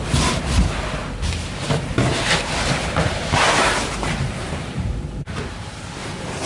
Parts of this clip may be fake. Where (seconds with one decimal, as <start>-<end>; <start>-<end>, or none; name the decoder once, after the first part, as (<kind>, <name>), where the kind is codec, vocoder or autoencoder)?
1.0-4.9 (vocoder, BigVGAN v2); 6.0-6.5